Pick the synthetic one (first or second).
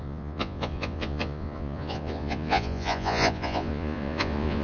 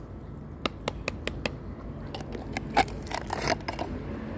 first